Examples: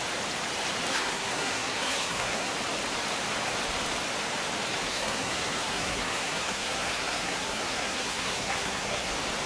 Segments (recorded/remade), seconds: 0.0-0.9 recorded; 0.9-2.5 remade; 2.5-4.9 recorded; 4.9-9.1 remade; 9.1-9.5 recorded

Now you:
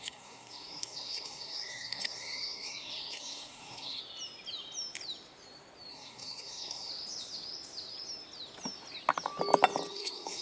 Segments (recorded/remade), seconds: 0.0-4.0 remade; 4.0-5.9 recorded; 5.9-6.9 remade; 6.9-9.9 recorded; 9.9-10.4 remade

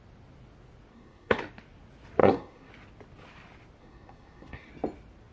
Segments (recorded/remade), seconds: 0.0-0.9 recorded; 0.9-1.4 remade; 1.4-2.2 recorded; 2.2-2.7 remade; 2.7-3.8 recorded; 3.8-4.7 remade; 4.7-5.3 recorded

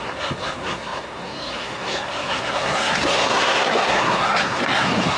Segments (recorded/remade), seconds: 0.0-5.2 remade

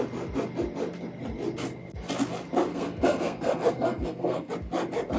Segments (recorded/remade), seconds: 0.0-2.7 recorded; 2.7-4.5 remade; 4.5-5.2 recorded

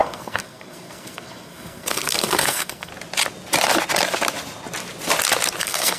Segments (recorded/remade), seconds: 0.0-2.9 remade; 2.9-5.6 recorded; 5.6-6.0 remade

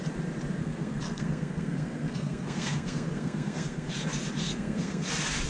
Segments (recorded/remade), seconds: 0.0-0.6 recorded; 0.6-3.9 remade; 3.9-4.4 recorded; 4.4-5.1 remade; 5.1-5.5 recorded